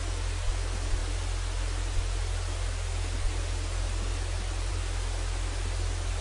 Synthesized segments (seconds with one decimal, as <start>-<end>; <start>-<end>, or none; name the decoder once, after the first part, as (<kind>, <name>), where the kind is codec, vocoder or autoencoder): none